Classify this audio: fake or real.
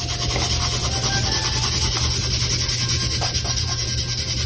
real